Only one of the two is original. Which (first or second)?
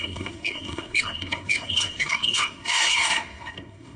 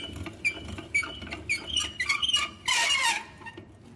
second